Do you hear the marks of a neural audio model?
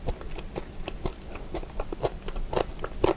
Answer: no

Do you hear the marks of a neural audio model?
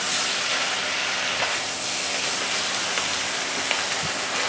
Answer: no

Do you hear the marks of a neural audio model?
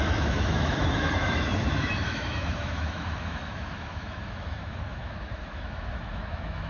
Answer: yes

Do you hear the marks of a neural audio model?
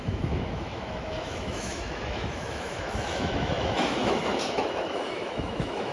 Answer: yes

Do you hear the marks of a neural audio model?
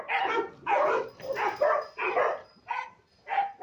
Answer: no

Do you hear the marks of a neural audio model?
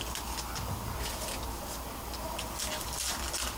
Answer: no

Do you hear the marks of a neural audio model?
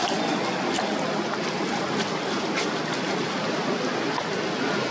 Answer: no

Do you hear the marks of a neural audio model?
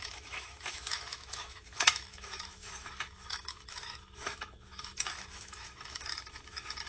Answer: yes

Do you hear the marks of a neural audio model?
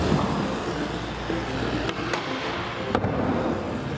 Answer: no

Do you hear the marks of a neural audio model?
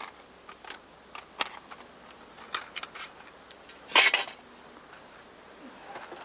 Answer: no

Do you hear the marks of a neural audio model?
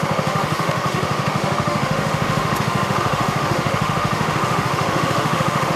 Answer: yes